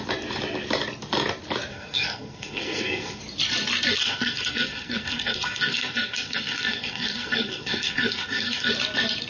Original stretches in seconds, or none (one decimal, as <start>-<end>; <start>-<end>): 0.0-1.7; 3.2-4.0; 8.7-9.3